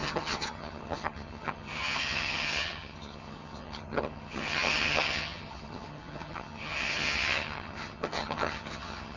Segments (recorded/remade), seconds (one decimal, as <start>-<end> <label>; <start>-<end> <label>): 0.0-9.2 remade